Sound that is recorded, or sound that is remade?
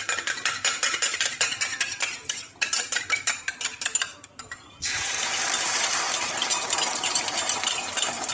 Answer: remade